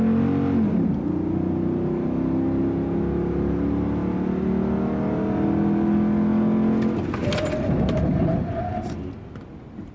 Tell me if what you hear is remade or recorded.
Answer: recorded